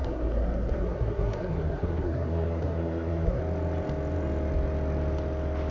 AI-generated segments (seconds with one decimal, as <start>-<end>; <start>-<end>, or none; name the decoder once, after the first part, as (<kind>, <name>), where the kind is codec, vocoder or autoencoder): 0.0-3.4 (codec, SNAC)